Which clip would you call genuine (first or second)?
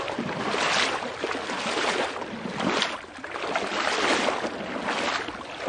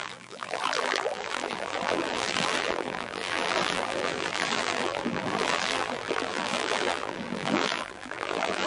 first